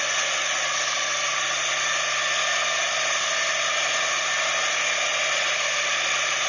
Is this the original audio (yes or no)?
yes